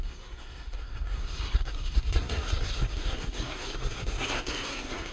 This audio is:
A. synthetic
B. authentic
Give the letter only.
A